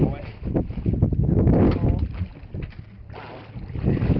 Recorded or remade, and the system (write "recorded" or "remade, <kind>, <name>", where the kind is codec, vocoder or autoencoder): recorded